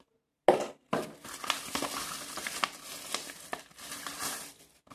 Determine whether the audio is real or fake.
real